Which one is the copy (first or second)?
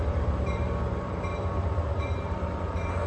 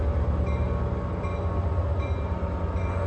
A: first